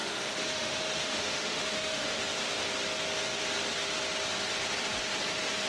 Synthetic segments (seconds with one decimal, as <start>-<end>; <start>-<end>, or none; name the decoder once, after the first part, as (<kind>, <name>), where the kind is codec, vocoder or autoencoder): 0.0-2.2 (autoencoder, DAC-VAE)